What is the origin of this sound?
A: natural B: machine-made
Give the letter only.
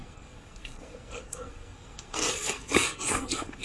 B